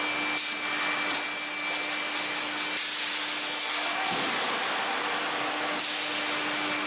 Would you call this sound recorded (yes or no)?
yes